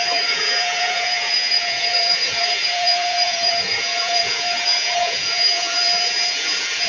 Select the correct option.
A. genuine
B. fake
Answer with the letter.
B